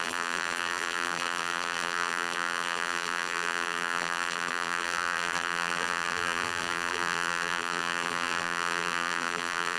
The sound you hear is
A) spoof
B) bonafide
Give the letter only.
A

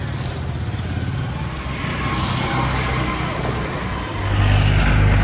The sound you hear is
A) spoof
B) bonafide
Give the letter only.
B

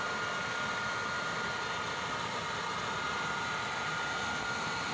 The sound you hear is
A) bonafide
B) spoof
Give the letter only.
B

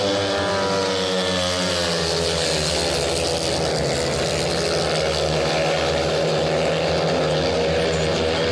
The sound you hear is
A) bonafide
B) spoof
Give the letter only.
A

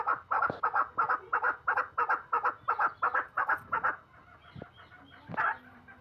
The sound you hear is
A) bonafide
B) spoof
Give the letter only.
A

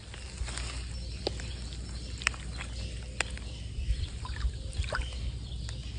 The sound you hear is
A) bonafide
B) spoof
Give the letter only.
A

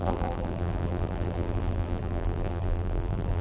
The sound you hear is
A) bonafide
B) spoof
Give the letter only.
B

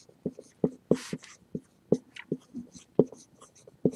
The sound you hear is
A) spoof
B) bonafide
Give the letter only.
B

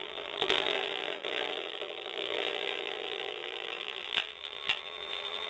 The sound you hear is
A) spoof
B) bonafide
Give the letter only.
A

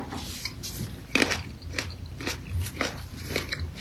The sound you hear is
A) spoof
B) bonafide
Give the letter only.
A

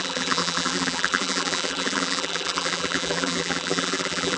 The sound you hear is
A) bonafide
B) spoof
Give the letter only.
B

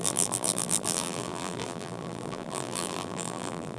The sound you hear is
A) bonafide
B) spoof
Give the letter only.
B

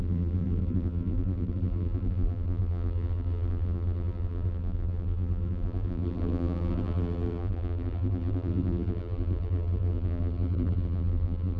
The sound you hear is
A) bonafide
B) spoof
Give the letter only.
B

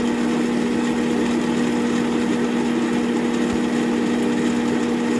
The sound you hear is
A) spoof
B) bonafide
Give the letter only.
B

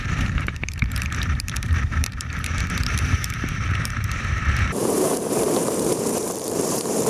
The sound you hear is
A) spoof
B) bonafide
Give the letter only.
A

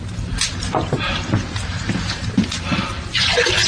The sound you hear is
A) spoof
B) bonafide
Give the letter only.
A